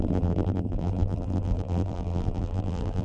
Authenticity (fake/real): fake